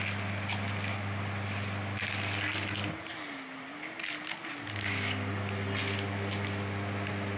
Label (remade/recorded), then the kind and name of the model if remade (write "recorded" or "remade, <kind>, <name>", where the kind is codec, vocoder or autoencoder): recorded